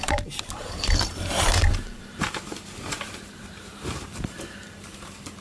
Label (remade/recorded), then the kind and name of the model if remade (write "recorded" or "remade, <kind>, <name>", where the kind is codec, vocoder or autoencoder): remade, vocoder, BigVGAN v2